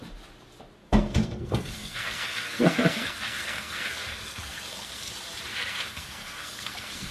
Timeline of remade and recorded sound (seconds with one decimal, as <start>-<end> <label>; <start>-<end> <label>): 0.0-0.8 recorded; 0.8-5.1 remade; 5.1-5.5 recorded; 5.5-7.1 remade